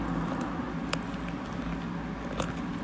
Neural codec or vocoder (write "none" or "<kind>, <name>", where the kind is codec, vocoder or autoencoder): none